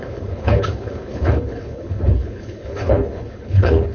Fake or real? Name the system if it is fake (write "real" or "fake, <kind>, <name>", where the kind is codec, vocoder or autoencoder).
fake, codec, HILCodec